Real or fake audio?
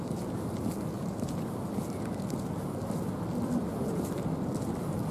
real